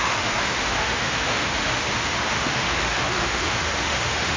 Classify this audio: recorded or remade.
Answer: remade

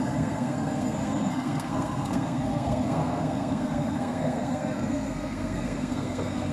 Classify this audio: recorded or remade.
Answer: remade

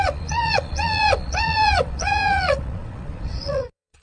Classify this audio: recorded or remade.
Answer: remade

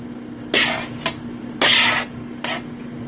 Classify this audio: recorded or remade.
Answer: recorded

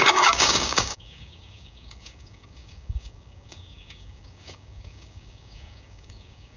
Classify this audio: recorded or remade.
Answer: remade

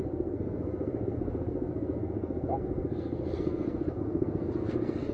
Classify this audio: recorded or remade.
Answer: remade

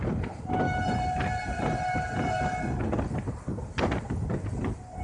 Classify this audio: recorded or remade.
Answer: recorded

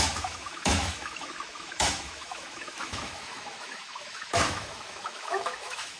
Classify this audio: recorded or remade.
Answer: remade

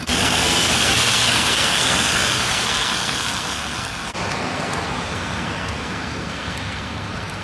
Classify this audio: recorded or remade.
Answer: remade